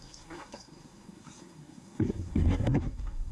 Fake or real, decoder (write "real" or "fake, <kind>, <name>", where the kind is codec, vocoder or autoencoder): fake, codec, SNAC